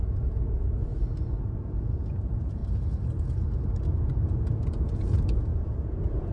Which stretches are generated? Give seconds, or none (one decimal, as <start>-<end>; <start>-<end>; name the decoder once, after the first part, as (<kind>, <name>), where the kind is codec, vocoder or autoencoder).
0.0-0.9 (vocoder, Vocos); 1.4-2.6; 3.9-6.3